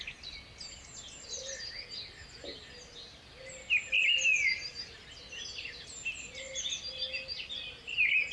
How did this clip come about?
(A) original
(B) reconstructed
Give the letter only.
A